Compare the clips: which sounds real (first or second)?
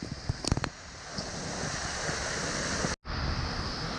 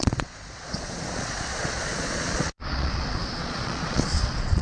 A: first